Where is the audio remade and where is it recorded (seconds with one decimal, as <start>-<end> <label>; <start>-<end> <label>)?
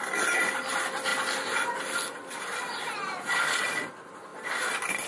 0.0-4.3 recorded; 4.3-5.1 remade